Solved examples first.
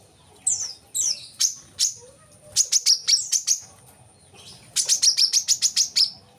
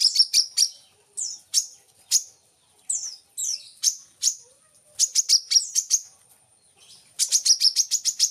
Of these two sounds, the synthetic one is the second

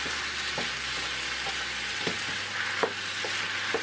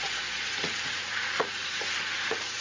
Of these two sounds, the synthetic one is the second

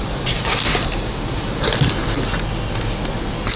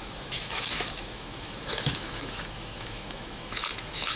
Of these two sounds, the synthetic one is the second